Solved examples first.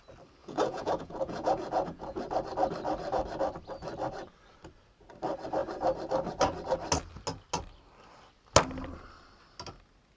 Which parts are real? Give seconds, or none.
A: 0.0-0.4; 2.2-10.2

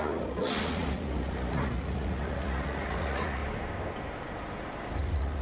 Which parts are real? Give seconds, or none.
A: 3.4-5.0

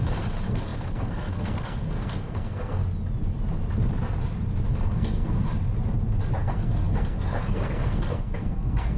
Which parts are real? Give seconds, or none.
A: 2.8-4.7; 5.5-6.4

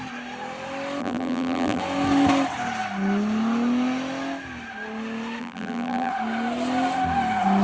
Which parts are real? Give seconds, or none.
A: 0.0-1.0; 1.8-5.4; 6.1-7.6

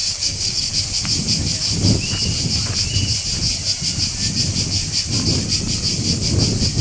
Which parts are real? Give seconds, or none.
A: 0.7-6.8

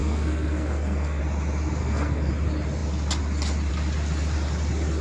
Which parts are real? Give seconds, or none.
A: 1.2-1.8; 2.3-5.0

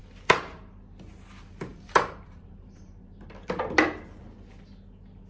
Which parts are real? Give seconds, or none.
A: 0.0-1.7; 3.6-5.3